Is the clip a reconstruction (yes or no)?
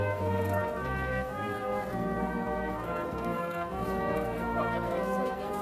yes